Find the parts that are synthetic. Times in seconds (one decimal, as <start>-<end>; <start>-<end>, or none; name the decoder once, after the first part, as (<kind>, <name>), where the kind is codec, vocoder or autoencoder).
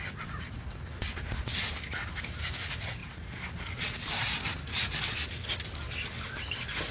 3.0-4.7 (vocoder, BigVGAN v2)